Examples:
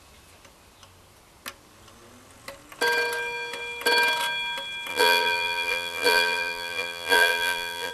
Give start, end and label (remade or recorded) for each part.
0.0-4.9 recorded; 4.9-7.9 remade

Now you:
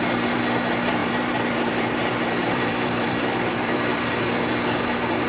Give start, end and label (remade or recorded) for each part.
0.0-1.0 recorded; 1.0-4.2 remade; 4.2-5.3 recorded

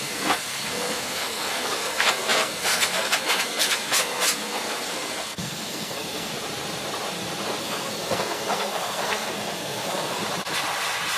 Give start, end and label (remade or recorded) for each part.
0.0-6.3 remade; 6.3-7.6 recorded; 7.6-10.2 remade; 10.2-11.2 recorded